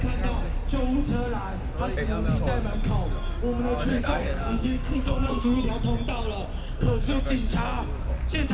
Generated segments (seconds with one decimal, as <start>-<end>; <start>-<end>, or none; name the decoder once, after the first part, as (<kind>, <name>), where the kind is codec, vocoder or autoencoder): 3.9-5.7 (codec, SNAC); 6.6-7.2